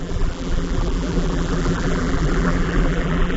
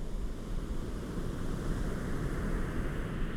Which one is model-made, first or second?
first